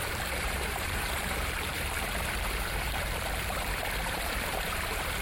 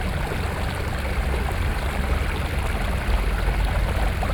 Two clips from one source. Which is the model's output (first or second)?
first